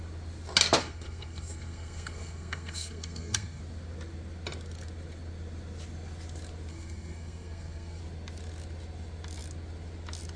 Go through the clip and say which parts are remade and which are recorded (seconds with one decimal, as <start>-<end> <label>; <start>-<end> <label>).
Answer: 0.0-0.8 recorded; 0.8-3.6 remade; 3.6-6.7 recorded; 6.7-8.0 remade; 8.0-10.4 recorded